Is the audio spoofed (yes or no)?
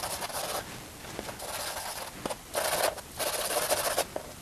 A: no